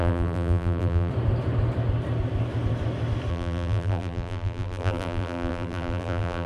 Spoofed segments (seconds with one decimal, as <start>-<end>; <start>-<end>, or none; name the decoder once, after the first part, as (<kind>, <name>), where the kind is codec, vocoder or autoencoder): 0.0-1.1 (vocoder, BigVGAN v2); 3.3-6.5